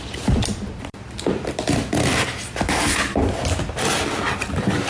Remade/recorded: remade